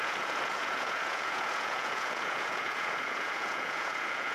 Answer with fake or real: fake